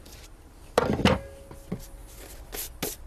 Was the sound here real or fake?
real